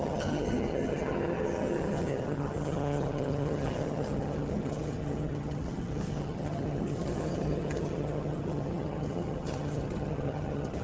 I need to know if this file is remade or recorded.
remade